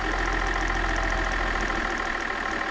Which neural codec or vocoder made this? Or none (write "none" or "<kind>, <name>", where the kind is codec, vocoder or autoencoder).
none